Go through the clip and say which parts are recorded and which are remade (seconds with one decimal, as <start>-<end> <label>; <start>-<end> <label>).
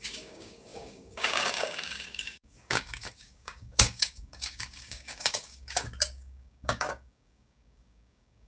0.0-8.5 remade